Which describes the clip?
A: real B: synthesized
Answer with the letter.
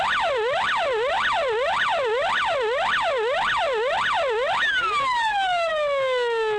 A